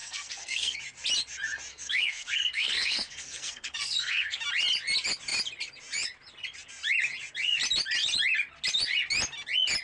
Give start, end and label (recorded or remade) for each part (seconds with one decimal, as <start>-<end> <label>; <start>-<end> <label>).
0.0-0.8 remade; 0.8-1.7 recorded; 1.7-4.4 remade; 4.4-9.8 recorded